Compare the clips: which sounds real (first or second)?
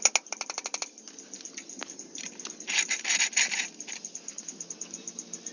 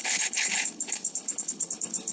first